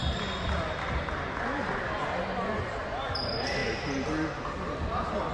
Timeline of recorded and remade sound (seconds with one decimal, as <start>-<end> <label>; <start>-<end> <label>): 0.0-2.8 recorded; 2.8-3.6 remade; 3.6-5.3 recorded